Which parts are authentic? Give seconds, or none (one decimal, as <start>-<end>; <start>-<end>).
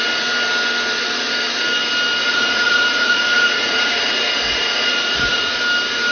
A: 0.0-2.2; 5.6-6.1